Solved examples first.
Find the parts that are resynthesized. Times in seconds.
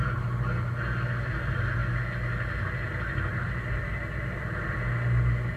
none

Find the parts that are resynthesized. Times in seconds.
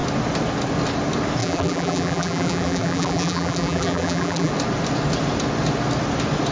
1.4-4.5 (vocoder, BigVGAN v2)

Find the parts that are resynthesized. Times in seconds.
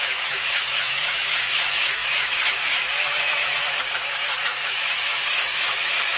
0.0-6.2 (autoencoder, DAC-VAE)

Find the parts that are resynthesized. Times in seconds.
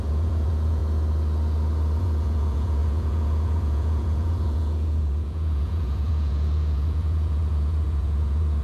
0.0-0.8 (vocoder, Vocos); 2.0-8.6